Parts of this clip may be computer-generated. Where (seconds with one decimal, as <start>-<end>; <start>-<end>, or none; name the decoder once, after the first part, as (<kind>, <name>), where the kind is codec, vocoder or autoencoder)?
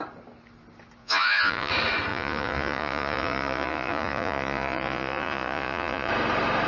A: 1.0-1.7 (vocoder, Vocos); 2.1-6.1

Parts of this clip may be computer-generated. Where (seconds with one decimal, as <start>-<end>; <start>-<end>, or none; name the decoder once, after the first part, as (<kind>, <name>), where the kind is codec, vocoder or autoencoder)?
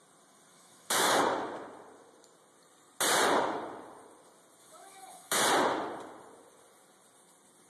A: 0.5-1.2 (autoencoder, DAC-VAE); 4.6-5.4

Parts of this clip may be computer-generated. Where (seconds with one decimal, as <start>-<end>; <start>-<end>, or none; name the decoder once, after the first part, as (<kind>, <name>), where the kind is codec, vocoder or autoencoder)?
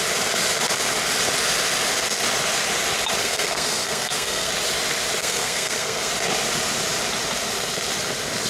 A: 3.2-4.5 (codec, SNAC); 5.2-6.1